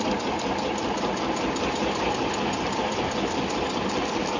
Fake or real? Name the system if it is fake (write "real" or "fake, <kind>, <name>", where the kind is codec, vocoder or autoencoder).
real